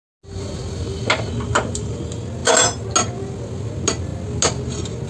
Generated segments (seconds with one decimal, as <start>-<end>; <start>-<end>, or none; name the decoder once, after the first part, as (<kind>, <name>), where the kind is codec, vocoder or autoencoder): none

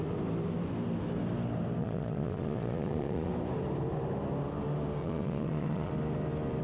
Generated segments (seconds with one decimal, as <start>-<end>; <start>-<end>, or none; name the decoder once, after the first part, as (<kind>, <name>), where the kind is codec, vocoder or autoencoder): 1.8-3.3 (vocoder, Vocos); 5.0-5.9

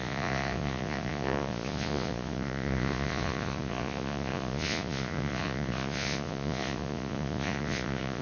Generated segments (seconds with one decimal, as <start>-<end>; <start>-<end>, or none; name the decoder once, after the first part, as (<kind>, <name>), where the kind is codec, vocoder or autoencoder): 0.0-8.2 (vocoder, Vocos)

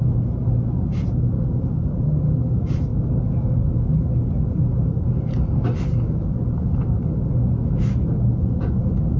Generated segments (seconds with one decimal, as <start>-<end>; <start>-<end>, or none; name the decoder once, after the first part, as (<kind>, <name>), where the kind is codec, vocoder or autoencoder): none